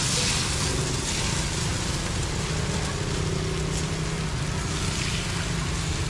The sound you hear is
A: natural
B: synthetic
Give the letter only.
A